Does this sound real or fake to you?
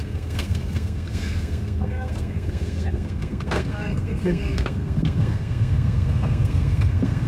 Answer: fake